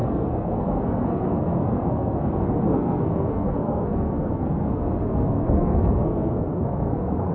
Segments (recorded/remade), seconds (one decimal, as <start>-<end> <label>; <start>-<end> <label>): 0.0-7.3 remade